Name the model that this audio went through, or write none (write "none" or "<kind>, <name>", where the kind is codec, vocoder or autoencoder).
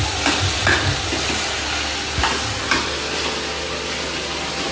none